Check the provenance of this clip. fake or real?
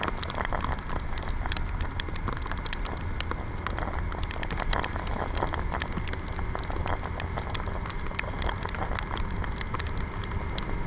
real